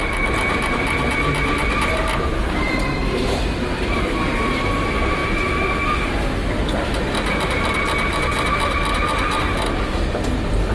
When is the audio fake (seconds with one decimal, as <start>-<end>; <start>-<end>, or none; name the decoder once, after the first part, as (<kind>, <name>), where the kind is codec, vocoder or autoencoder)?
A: none